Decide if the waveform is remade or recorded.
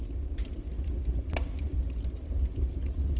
recorded